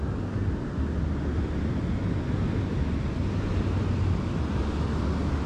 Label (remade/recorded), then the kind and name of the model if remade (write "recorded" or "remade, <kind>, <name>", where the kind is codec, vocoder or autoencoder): recorded